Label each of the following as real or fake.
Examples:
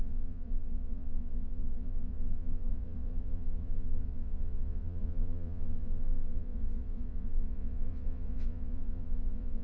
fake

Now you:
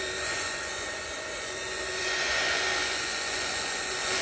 fake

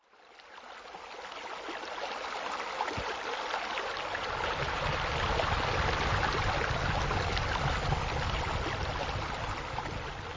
real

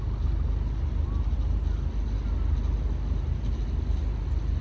real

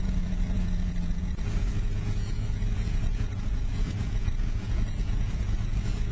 fake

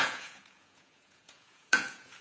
fake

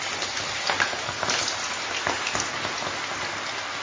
real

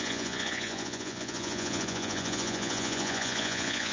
fake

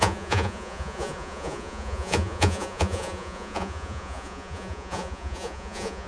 fake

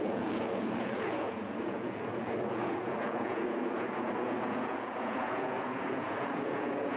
fake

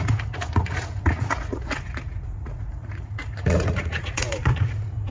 fake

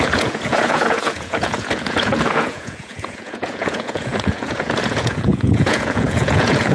fake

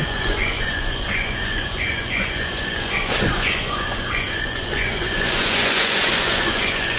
fake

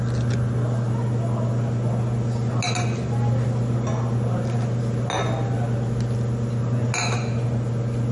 real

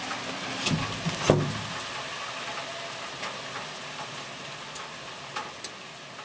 real